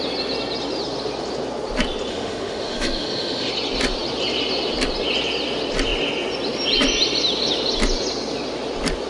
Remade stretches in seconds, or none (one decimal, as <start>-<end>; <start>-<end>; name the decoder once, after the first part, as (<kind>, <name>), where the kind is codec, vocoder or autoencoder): 2.1-3.5 (autoencoder, DAC-VAE)